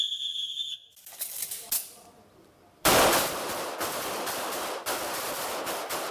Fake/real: fake